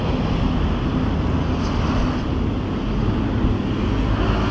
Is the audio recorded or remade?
recorded